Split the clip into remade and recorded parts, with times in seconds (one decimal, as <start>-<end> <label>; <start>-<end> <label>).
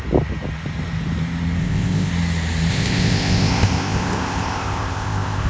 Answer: 0.0-1.6 recorded; 1.6-2.1 remade; 2.1-2.7 recorded; 2.7-5.5 remade